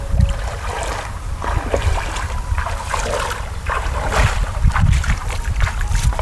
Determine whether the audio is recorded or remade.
recorded